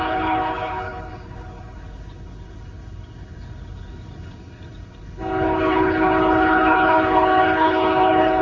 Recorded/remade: remade